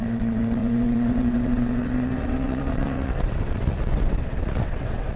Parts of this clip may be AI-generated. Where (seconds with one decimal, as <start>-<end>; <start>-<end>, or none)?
0.0-5.2